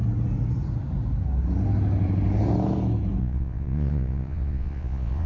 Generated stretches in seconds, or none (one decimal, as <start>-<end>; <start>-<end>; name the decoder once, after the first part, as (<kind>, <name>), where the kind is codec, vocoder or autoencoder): 3.2-5.3 (vocoder, Vocos)